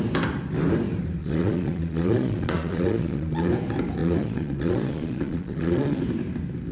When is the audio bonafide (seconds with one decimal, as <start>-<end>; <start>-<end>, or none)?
0.0-1.2; 3.5-4.0; 6.0-6.7